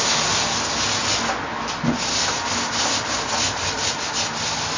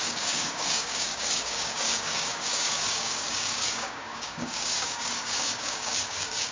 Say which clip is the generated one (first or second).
second